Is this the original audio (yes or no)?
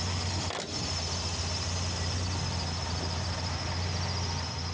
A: yes